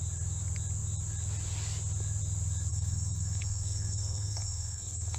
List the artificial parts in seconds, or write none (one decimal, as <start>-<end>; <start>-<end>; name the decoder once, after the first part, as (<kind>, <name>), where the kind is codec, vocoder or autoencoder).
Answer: 2.7-5.2 (codec, SNAC)